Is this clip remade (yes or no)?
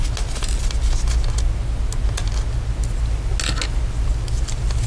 no